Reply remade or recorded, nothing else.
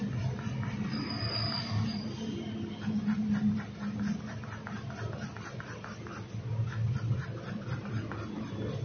recorded